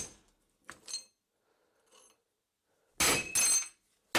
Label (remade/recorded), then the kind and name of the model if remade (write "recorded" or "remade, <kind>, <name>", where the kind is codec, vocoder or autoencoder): recorded